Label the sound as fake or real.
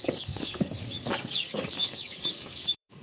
fake